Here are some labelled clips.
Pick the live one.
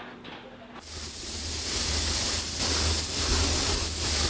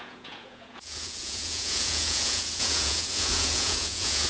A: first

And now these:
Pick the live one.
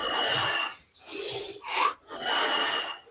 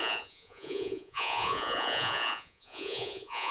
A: first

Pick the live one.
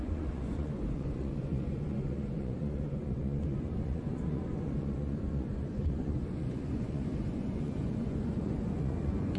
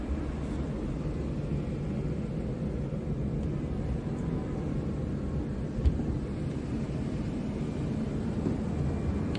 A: second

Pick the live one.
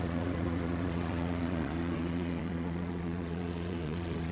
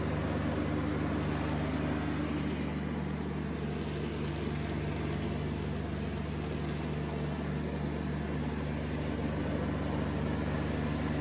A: second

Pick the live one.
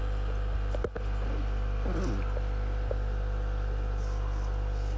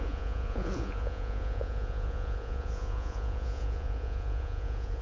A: first